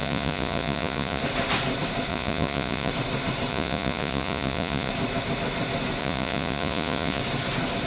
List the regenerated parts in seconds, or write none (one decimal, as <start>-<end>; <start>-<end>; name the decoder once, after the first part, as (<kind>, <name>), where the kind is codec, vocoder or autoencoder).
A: 0.0-1.2 (vocoder, Vocos); 2.1-2.9; 3.5-4.9; 6.0-7.2